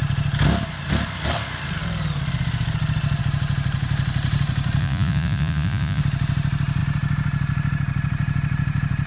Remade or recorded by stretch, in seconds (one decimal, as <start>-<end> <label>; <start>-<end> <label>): 0.0-4.8 recorded; 4.8-6.0 remade; 6.0-9.1 recorded